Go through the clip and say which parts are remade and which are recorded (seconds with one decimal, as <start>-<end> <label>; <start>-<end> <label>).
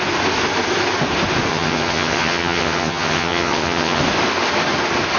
0.0-1.5 recorded; 1.5-4.0 remade; 4.0-5.2 recorded